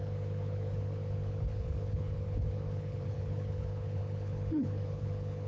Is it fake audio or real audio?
fake